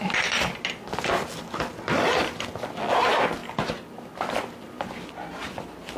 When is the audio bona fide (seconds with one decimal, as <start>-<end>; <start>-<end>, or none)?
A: 0.0-6.0